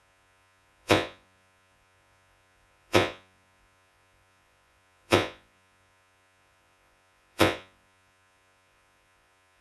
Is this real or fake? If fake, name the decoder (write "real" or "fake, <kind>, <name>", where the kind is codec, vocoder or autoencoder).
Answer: fake, vocoder, Vocos